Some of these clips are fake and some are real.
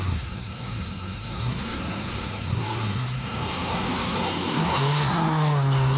fake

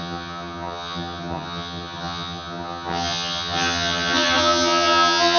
fake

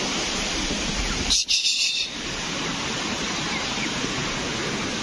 real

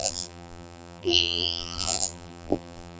fake